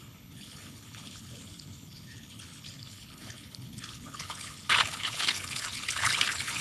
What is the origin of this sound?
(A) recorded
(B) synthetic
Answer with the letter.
B